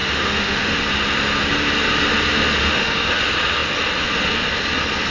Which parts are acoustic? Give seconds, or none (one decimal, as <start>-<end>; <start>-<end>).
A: 0.8-2.6; 3.2-5.1